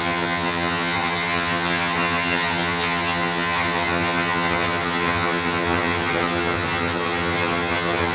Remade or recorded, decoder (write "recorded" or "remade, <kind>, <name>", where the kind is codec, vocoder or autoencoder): remade, vocoder, HiFi-GAN